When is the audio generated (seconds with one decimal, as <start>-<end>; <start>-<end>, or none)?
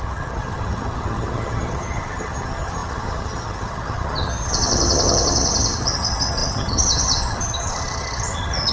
0.0-8.7